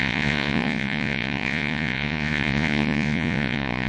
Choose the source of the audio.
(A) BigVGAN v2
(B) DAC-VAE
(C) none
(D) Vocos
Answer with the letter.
D